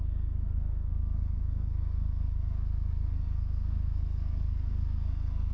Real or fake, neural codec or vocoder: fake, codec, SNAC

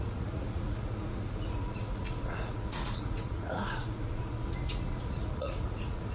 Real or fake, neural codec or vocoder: fake, vocoder, Vocos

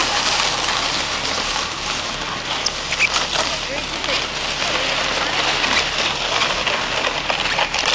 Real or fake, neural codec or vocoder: real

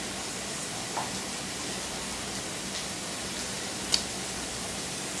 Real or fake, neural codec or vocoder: real